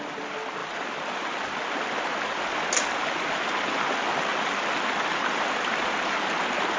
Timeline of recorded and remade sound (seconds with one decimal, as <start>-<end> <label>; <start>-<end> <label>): 0.0-6.8 recorded